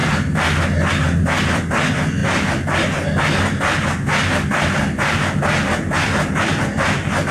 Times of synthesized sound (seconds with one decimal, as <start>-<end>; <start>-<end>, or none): none